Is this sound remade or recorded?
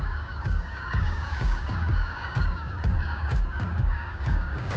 remade